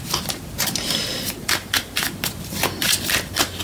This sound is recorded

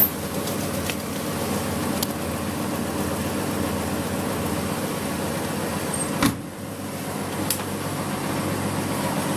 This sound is recorded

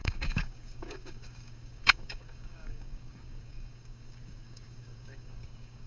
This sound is remade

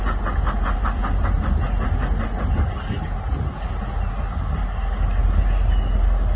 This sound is recorded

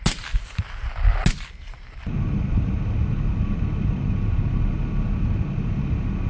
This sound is recorded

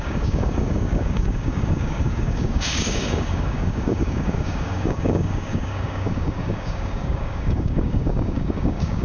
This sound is remade